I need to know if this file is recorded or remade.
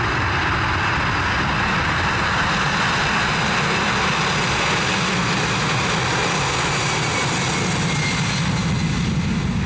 recorded